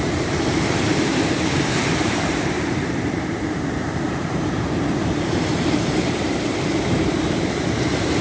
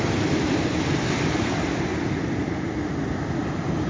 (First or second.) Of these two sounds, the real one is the second